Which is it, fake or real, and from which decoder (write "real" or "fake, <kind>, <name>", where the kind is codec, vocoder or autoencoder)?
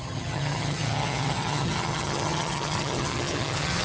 fake, vocoder, HiFi-GAN